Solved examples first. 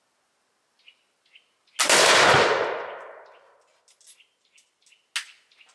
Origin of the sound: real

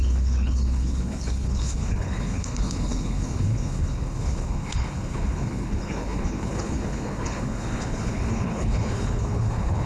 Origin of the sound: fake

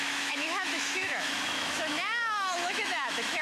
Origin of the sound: fake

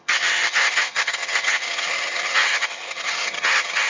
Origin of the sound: fake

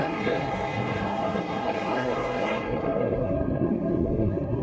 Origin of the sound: fake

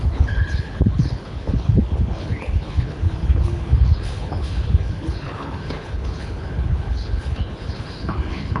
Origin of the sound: fake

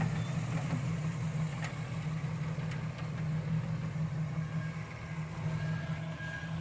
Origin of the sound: real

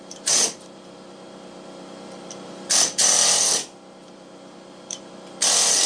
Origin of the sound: fake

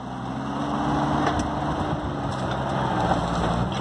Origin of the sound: real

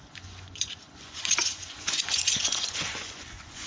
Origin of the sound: fake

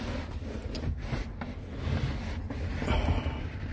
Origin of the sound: real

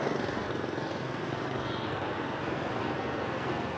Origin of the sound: fake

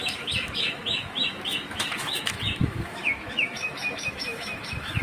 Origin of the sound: fake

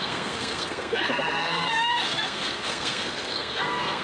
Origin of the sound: fake